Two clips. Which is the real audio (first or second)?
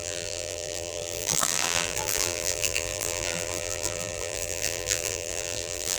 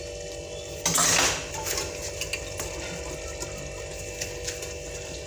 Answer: second